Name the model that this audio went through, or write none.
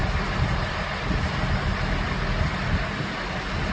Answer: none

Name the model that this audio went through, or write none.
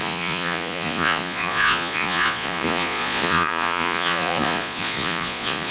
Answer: vocoder, Vocos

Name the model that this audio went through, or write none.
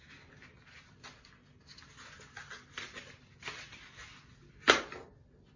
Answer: none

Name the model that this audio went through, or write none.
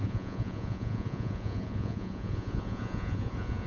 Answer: vocoder, Vocos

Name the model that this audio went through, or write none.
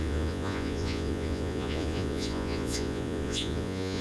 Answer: vocoder, Vocos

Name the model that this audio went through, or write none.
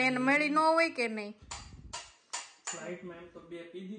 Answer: none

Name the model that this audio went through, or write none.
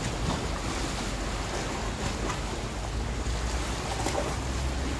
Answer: none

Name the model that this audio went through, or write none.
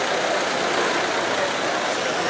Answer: none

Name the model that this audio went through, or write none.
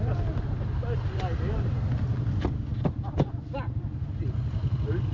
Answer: none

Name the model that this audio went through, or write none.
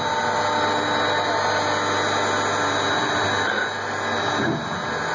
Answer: none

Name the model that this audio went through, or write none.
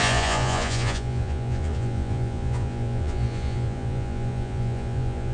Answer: vocoder, Vocos